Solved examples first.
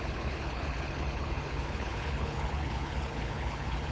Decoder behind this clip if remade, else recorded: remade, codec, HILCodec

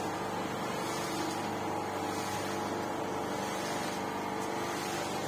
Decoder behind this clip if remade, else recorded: recorded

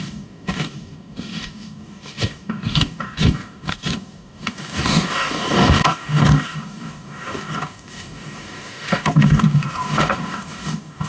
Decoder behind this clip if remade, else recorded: remade, codec, DAC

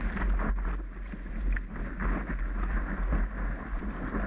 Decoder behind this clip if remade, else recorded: recorded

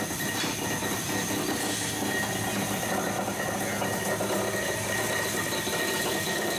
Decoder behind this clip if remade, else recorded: recorded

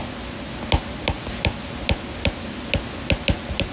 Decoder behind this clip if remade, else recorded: recorded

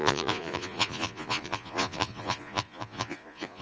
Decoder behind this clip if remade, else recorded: remade, vocoder, Vocos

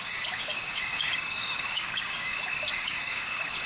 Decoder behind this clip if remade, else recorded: remade, codec, DAC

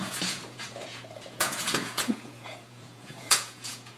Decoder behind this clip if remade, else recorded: remade, vocoder, Vocos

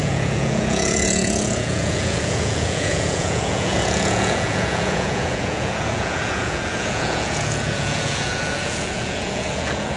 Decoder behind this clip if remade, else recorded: remade, vocoder, Vocos